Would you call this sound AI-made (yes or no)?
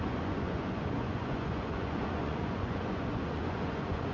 yes